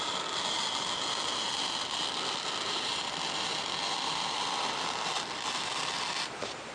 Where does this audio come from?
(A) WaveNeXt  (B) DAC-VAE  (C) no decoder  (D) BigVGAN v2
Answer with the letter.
C